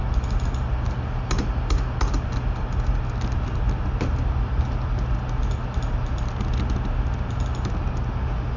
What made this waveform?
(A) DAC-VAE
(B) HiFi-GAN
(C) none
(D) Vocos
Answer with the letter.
C